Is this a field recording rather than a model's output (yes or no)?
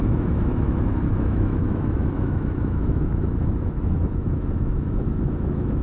no